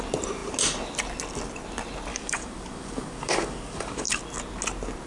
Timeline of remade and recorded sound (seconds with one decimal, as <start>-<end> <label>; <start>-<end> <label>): 0.0-2.1 recorded; 2.1-4.2 remade; 4.2-5.1 recorded